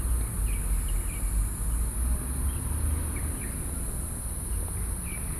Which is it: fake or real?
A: real